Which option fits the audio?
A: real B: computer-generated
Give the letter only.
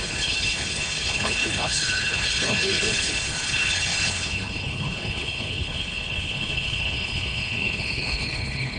B